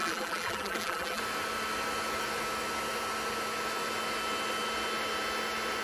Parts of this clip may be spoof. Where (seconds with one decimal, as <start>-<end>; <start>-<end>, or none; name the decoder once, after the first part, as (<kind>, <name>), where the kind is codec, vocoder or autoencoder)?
0.0-1.2 (vocoder, BigVGAN v2)